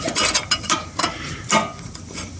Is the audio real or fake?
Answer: real